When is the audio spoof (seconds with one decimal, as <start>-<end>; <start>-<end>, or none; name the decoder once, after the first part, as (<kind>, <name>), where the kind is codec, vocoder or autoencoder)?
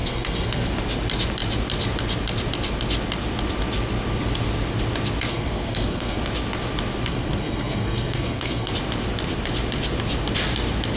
0.0-0.7 (codec, SNAC); 5.3-6.2; 7.1-8.7